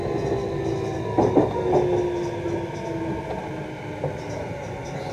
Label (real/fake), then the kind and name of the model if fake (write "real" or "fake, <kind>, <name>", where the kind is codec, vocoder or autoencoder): real